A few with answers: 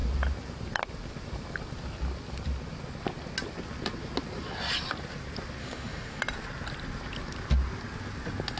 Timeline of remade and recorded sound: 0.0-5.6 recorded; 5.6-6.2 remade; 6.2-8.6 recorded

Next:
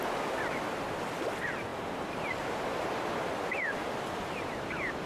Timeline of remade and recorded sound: 0.0-5.1 recorded

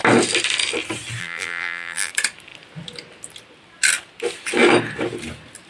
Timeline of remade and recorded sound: 0.0-1.2 recorded; 1.2-2.1 remade; 2.1-5.7 recorded

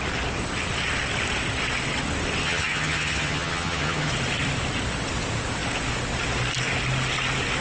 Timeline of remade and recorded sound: 0.0-2.4 recorded; 2.4-4.1 remade; 4.1-7.6 recorded

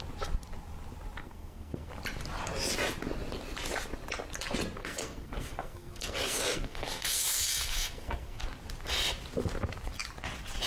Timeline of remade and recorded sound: 0.0-1.2 recorded; 1.2-1.9 remade; 1.9-4.8 recorded; 4.8-8.4 remade; 8.4-10.7 recorded

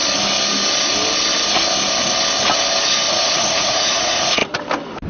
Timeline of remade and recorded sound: 0.0-3.1 recorded; 3.1-4.4 remade; 4.4-5.1 recorded